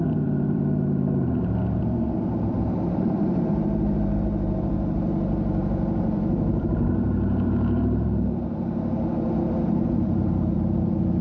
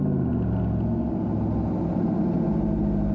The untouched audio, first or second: second